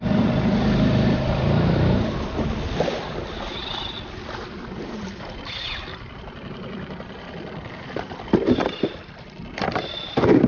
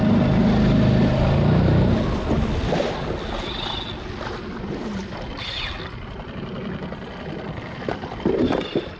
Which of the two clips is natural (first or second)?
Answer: second